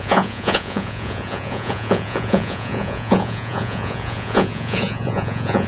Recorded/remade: remade